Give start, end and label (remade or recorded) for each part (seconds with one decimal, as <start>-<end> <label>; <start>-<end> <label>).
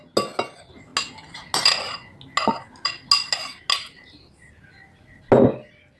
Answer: 0.0-6.0 recorded